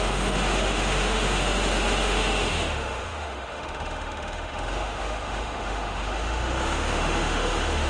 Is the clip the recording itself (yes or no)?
no